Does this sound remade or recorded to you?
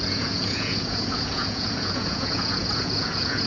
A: remade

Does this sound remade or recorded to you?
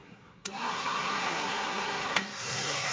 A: remade